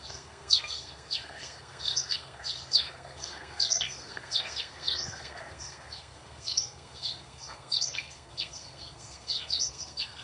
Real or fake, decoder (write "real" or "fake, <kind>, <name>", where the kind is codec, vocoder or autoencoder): fake, codec, SNAC